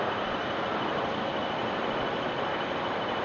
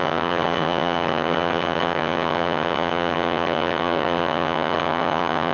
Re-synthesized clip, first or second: second